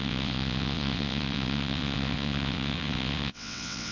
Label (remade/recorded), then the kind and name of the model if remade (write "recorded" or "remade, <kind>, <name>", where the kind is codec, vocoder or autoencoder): remade, vocoder, WaveNeXt